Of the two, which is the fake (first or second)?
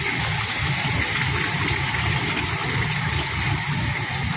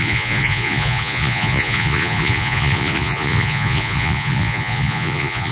second